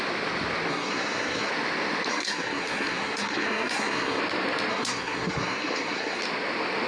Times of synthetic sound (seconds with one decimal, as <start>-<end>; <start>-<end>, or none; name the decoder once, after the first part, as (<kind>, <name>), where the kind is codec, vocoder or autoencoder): 0.7-1.5 (codec, SNAC); 2.1-4.2; 4.7-6.2